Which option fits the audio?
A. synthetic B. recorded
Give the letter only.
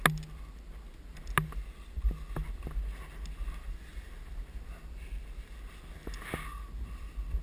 B